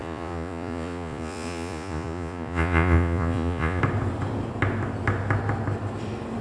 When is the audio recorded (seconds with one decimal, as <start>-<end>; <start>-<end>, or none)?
3.8-6.4